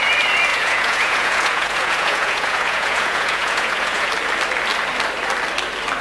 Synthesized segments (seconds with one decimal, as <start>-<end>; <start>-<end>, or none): 0.5-4.1